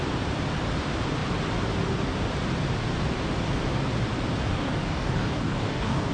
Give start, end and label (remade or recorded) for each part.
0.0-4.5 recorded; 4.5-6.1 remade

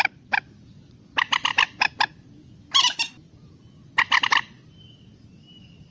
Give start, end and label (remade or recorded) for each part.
0.0-5.9 recorded

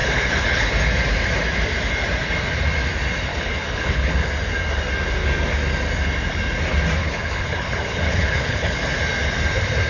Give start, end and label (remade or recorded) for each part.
0.0-0.7 remade; 0.7-3.3 recorded; 3.3-4.3 remade; 4.3-7.0 recorded; 7.0-8.8 remade; 8.8-9.9 recorded

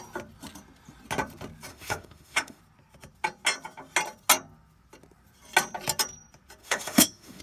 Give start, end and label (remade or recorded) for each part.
0.0-1.7 recorded; 1.7-2.6 remade; 2.6-6.6 recorded; 6.6-7.4 remade

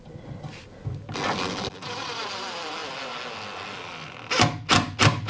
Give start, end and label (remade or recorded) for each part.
0.0-5.3 recorded